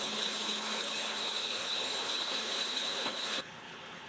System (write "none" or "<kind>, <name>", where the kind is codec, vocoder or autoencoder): codec, HILCodec